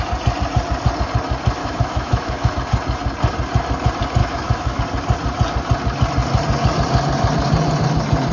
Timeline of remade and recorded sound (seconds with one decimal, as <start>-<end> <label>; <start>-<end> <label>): 0.0-1.6 recorded; 1.6-2.5 remade; 2.5-4.2 recorded; 4.2-4.8 remade; 4.8-8.3 recorded